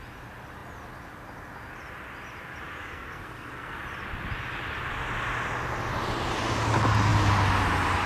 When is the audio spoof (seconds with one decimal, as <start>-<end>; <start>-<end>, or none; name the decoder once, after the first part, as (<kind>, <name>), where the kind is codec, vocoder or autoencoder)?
2.8-3.8 (codec, SNAC)